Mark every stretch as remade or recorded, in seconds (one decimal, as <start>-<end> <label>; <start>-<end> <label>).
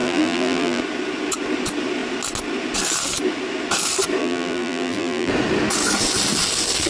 0.0-0.8 remade; 0.8-4.2 recorded; 4.2-5.3 remade; 5.3-6.9 recorded